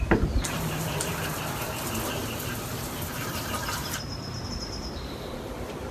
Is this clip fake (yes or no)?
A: yes